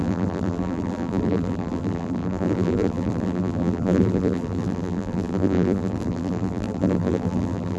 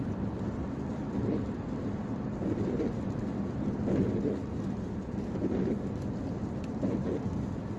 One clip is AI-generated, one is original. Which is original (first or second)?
second